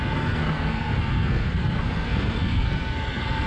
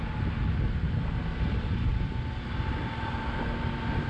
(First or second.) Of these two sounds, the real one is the second